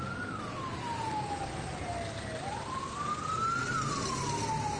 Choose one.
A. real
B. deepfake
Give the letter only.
A